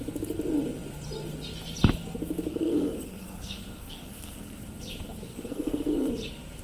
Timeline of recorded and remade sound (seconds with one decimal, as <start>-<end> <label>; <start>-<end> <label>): 0.0-2.5 recorded; 2.5-4.6 remade; 4.6-5.3 recorded; 5.3-6.1 remade; 6.1-6.6 recorded

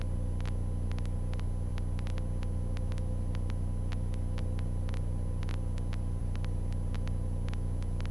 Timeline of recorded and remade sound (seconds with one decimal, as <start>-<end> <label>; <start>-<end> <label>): 0.0-8.1 recorded

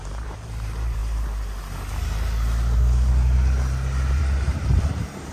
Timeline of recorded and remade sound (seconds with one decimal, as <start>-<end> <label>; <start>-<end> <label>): 0.0-1.0 remade; 1.0-4.2 recorded; 4.2-5.3 remade

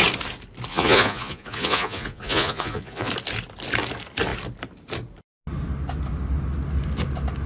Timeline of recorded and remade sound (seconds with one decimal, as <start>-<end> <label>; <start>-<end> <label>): 0.0-0.7 recorded; 0.7-3.1 remade; 3.1-7.5 recorded

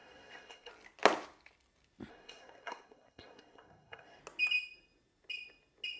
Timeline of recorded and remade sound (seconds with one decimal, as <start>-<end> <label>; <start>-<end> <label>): 0.0-0.7 remade; 0.7-2.1 recorded; 2.1-4.2 remade; 4.2-6.0 recorded